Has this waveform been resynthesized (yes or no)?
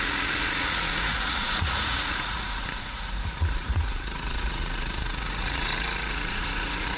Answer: yes